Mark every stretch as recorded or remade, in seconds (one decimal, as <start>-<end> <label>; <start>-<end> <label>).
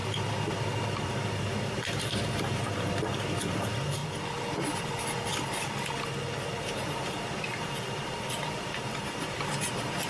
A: 0.0-0.5 recorded; 0.5-4.0 remade; 4.0-6.6 recorded; 6.6-10.1 remade